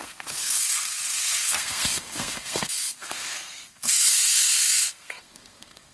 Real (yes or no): no